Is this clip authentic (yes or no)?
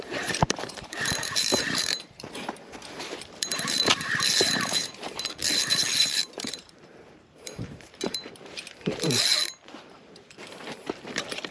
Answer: no